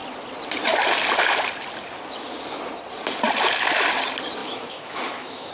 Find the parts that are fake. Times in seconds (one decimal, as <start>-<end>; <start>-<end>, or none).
4.4-5.5